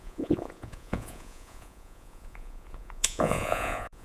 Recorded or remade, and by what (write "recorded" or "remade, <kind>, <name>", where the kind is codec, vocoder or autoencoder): remade, vocoder, Vocos